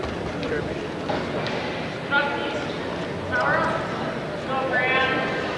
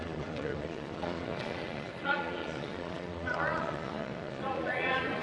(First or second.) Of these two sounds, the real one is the first